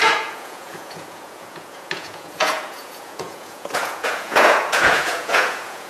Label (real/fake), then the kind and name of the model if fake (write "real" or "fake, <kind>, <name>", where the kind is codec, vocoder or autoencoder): fake, vocoder, Vocos